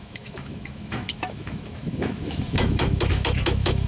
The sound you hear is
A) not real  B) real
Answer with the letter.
A